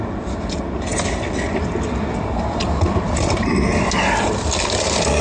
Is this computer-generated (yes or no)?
no